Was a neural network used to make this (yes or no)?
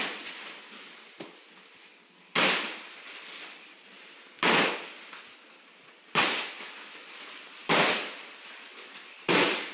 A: no